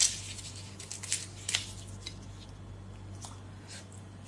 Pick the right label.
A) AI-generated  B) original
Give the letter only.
B